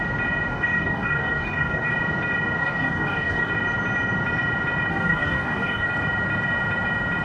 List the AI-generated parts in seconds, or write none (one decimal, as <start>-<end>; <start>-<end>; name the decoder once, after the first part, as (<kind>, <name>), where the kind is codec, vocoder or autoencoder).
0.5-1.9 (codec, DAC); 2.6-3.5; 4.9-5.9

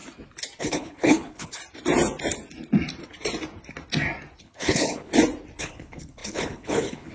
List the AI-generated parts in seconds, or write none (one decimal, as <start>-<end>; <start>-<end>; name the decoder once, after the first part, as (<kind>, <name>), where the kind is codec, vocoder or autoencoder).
0.6-1.6 (codec, HILCodec); 4.4-5.1; 5.6-7.1

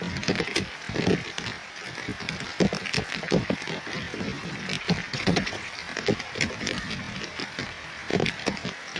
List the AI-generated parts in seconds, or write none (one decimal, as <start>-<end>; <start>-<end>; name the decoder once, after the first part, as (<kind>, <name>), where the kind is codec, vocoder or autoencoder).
5.1-5.7 (vocoder, WaveNeXt)